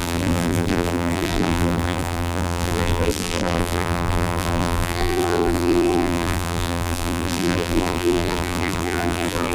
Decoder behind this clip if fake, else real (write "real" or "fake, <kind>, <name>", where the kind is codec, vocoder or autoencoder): fake, vocoder, BigVGAN v2